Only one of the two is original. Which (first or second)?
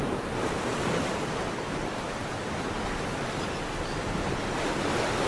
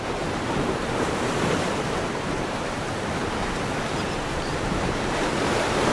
first